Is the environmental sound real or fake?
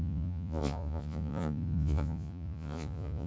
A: fake